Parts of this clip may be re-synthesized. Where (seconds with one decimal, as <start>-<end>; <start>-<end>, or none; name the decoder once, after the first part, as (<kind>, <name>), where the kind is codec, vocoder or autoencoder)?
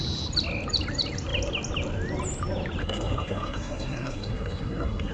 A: 2.8-5.1 (codec, SNAC)